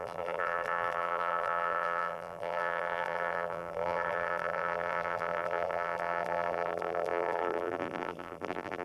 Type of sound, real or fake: fake